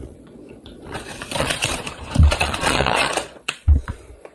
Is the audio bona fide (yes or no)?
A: no